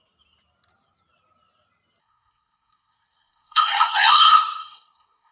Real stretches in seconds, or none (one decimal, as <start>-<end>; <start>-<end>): 0.0-2.0